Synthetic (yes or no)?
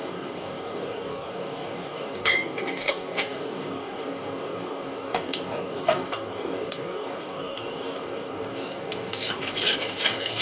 yes